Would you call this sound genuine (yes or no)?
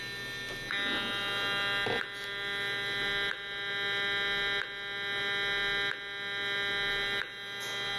yes